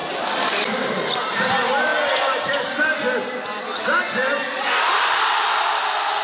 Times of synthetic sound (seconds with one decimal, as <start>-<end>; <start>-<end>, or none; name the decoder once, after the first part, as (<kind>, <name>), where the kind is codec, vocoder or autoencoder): none